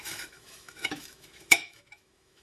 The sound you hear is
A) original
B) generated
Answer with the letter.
B